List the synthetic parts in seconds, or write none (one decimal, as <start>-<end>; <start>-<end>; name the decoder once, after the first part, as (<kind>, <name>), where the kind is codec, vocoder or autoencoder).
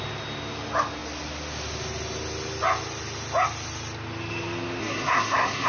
4.8-5.7 (codec, SNAC)